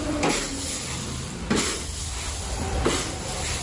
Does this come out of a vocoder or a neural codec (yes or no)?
no